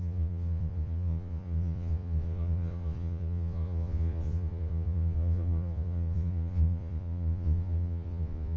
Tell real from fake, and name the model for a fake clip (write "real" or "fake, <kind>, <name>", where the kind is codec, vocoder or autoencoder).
fake, vocoder, Vocos